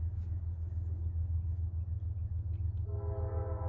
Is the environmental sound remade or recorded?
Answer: recorded